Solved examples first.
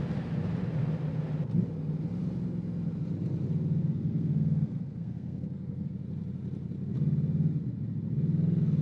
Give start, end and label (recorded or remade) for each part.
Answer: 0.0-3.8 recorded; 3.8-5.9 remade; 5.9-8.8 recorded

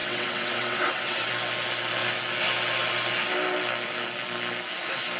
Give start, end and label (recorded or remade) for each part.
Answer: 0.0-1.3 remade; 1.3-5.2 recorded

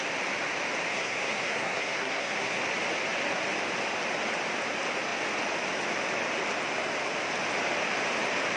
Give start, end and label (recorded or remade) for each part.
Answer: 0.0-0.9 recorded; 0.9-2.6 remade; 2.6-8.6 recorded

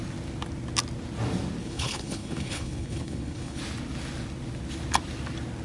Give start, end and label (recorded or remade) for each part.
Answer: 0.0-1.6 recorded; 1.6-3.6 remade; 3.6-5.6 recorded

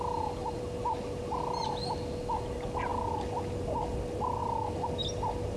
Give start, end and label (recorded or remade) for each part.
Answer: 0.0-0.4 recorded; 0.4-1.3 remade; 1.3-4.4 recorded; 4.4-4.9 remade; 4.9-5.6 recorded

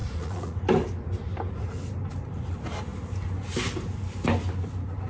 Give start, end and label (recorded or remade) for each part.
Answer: 0.0-0.6 remade; 0.6-5.1 recorded